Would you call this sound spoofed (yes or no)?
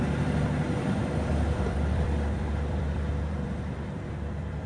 yes